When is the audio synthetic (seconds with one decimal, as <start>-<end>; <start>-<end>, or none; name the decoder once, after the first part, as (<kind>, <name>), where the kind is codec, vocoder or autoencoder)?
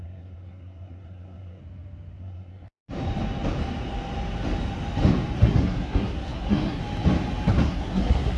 0.0-1.6 (codec, SNAC); 2.2-2.8; 5.4-6.8; 7.5-8.4